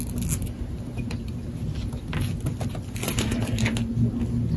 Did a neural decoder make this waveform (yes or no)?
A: no